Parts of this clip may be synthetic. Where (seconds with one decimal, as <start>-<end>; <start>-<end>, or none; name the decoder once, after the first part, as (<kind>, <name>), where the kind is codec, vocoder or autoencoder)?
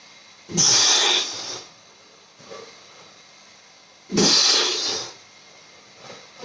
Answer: none